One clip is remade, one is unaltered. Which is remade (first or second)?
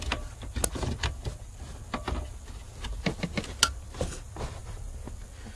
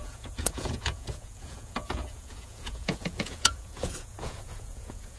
second